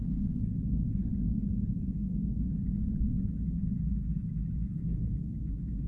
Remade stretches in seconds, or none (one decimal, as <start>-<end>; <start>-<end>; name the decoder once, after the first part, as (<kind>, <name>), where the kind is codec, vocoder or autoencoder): 2.1-5.9 (autoencoder, DAC-VAE)